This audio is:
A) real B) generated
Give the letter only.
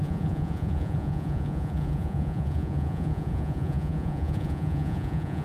B